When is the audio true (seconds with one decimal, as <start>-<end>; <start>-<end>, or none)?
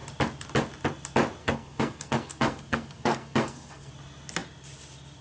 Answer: 0.0-1.4; 3.9-5.2